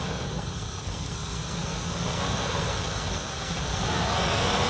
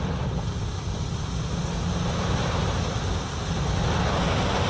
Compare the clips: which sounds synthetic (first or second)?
first